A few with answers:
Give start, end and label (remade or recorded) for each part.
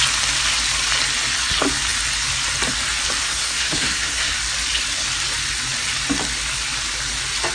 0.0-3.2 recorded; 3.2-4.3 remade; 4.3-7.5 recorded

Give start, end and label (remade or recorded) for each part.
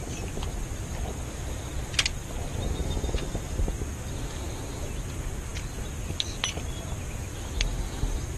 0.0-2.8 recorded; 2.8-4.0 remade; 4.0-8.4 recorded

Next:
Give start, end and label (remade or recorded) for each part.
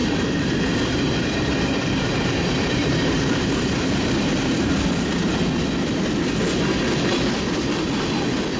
0.0-4.8 remade; 4.8-8.6 recorded